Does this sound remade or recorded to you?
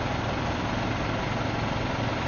recorded